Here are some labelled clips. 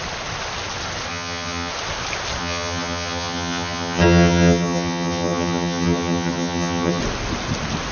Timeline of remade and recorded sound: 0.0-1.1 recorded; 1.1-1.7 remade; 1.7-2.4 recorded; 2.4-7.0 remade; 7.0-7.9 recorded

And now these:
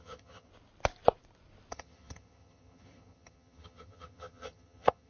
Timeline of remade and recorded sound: 0.0-0.5 remade; 0.5-1.7 recorded; 1.7-5.1 remade